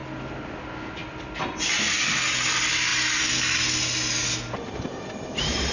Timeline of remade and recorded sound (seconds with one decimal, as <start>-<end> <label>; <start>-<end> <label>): 0.0-5.7 recorded